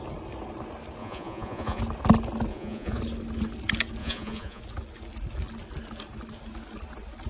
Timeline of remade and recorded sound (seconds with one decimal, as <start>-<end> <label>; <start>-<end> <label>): 0.0-1.0 recorded; 1.0-1.8 remade; 1.8-2.5 recorded; 2.5-3.0 remade; 3.0-4.0 recorded; 4.0-4.6 remade; 4.6-7.3 recorded